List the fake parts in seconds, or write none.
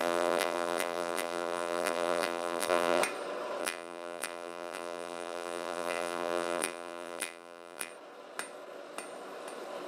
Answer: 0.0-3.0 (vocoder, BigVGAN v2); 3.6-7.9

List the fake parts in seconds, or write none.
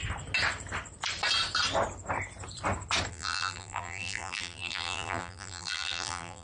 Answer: 3.1-6.4 (vocoder, BigVGAN v2)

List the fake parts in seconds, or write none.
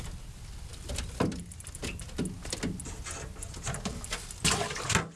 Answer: none